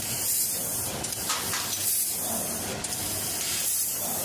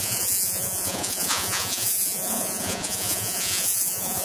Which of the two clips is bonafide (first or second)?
first